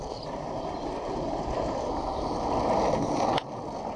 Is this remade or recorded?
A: recorded